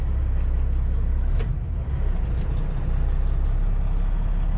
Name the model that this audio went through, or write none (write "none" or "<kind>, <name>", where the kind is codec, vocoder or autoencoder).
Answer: none